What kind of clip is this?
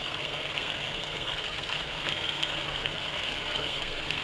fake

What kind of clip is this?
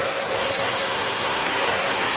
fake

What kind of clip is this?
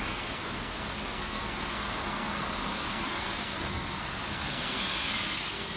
fake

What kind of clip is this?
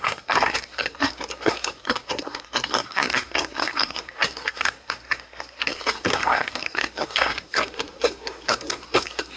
fake